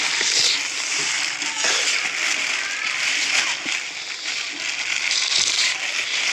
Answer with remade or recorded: recorded